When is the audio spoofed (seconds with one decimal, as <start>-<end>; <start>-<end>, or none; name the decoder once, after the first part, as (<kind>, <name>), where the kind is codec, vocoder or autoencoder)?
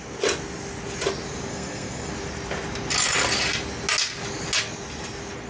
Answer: 1.5-2.1 (codec, SNAC)